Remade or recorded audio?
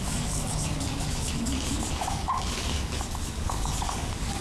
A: remade